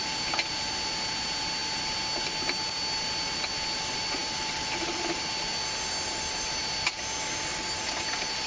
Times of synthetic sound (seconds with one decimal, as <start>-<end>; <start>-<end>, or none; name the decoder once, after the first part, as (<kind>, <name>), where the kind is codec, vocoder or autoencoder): none

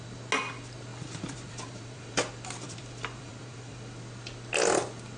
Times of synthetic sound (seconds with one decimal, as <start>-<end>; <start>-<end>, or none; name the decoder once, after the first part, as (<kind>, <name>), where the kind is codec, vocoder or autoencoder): 0.9-4.0 (vocoder, BigVGAN v2)

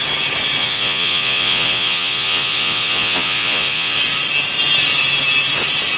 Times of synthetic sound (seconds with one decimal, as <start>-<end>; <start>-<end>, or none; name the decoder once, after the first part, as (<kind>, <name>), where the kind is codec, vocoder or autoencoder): 0.6-4.0 (vocoder, Vocos)

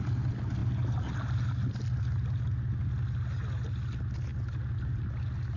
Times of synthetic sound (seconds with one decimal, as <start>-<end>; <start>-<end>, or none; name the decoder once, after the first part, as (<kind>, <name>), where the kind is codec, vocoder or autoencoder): none

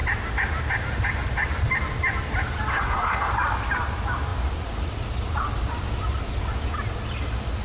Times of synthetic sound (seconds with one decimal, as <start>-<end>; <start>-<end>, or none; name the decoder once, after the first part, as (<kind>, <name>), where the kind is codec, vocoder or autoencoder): 2.7-3.3 (codec, SNAC)

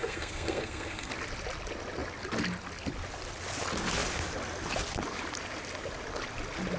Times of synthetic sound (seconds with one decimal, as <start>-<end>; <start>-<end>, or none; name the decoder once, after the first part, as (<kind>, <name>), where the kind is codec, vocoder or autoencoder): 0.0-1.1 (codec, SNAC)